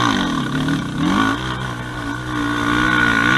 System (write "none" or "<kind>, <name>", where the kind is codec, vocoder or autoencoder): none